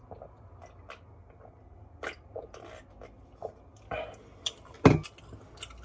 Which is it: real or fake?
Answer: real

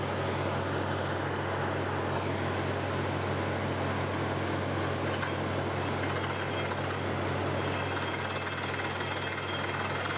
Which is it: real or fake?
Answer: real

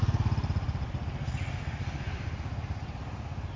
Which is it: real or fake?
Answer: real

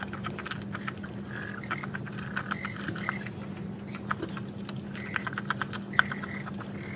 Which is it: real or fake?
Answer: real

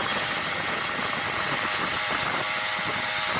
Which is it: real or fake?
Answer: real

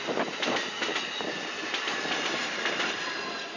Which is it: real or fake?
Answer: real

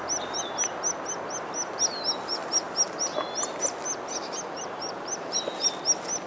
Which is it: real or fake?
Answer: real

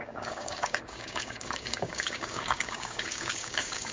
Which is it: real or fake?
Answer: fake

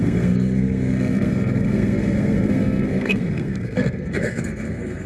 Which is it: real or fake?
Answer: fake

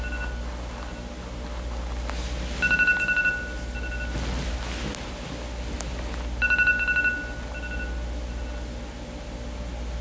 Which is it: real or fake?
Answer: real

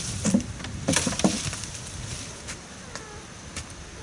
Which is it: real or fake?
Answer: real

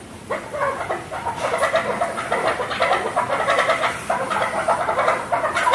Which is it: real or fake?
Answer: real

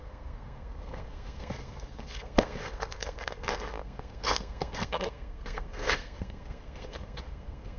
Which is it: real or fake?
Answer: fake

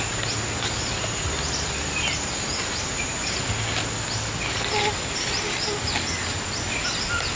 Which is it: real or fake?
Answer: real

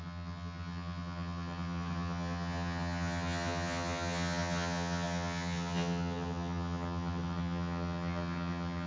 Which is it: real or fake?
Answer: fake